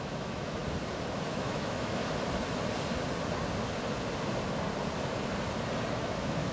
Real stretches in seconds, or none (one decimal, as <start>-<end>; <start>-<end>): 0.6-1.3; 2.0-5.9